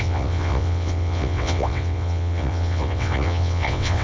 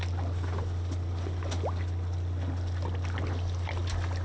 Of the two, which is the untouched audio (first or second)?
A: second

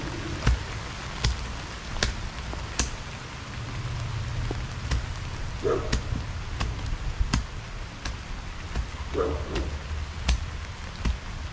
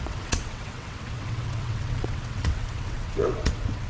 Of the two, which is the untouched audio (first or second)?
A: first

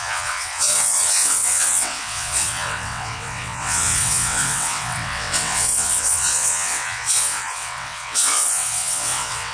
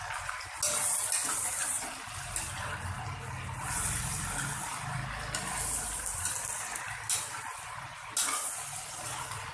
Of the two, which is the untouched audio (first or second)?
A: second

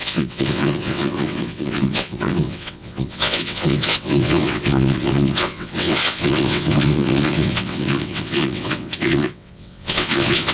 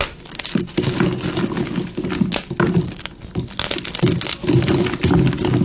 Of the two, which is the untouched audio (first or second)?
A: second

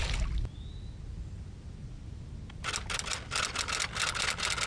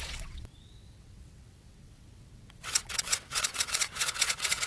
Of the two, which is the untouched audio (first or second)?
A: first